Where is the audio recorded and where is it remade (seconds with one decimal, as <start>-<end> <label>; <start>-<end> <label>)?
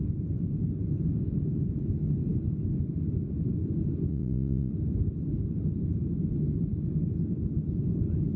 0.0-4.1 recorded; 4.1-4.7 remade; 4.7-8.4 recorded